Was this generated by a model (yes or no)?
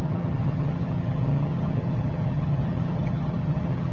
yes